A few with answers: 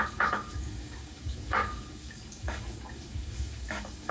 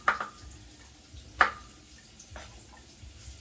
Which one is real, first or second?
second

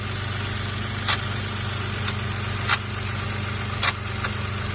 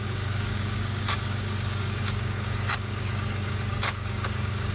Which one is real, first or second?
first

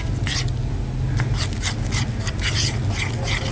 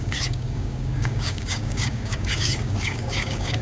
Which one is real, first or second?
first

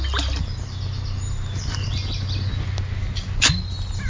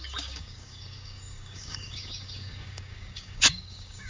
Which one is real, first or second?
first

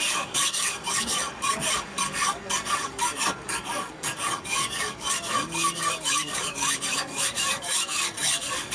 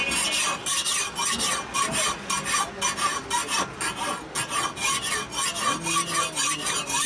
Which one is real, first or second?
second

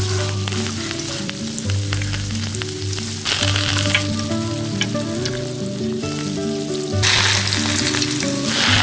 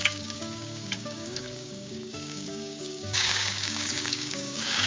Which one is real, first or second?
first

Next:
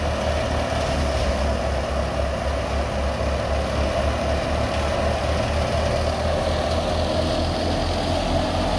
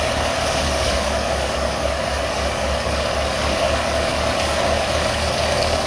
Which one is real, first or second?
first